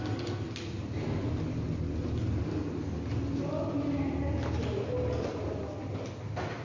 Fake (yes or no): no